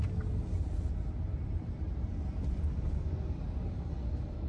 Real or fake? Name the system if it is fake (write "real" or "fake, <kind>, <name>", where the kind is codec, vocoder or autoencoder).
real